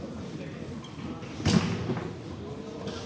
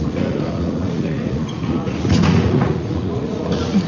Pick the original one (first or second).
first